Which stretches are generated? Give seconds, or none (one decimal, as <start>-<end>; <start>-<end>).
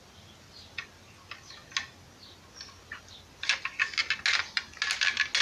none